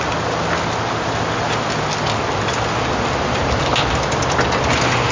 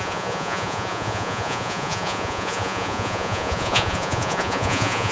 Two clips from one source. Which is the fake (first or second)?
second